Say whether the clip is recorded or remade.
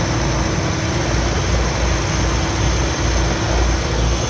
recorded